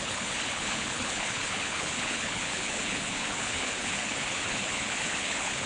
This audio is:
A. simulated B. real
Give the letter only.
A